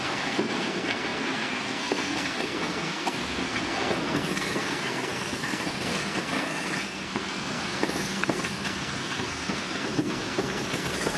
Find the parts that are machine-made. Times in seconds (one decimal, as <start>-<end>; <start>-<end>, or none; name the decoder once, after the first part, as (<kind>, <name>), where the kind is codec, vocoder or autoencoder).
0.0-11.2 (codec, SNAC)